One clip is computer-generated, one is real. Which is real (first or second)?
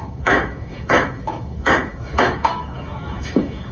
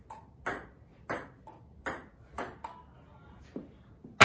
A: second